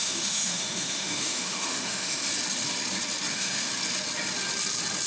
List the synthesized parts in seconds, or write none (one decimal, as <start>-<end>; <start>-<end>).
0.0-2.2; 3.3-3.7

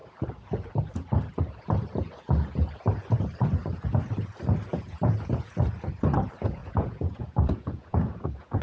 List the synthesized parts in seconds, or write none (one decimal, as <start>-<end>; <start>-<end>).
4.7-5.6; 6.6-8.6

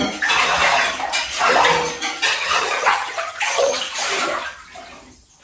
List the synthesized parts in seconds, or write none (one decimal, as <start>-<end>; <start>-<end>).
2.3-3.8

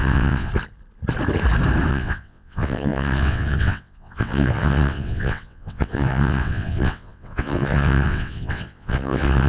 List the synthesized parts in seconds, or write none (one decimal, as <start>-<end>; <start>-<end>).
0.0-0.5; 1.9-9.5

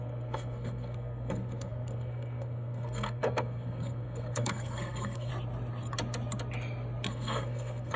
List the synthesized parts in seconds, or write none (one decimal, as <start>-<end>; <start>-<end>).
0.0-5.3; 7.1-8.0